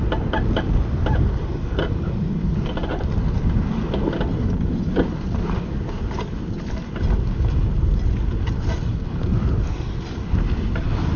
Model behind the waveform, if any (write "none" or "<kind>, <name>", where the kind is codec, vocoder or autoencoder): none